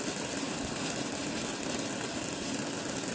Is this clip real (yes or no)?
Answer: yes